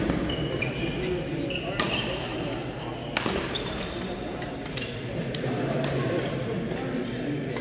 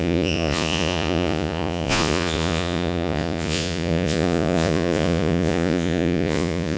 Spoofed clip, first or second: second